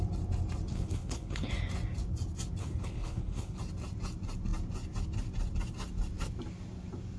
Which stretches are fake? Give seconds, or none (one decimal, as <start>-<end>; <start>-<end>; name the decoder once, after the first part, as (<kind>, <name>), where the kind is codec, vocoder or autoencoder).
0.7-1.5 (codec, HILCodec); 2.6-3.6